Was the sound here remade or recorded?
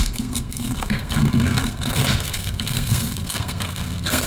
remade